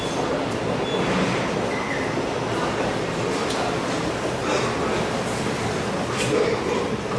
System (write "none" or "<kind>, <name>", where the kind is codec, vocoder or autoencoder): none